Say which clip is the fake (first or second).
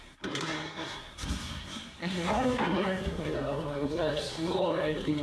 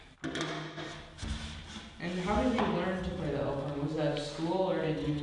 first